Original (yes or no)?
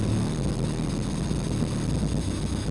yes